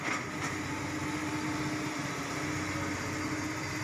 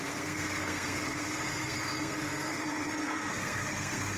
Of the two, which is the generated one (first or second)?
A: second